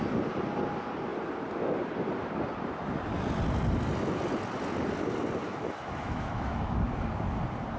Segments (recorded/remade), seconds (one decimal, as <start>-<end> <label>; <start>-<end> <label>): 0.0-5.4 recorded; 5.4-6.7 remade; 6.7-7.8 recorded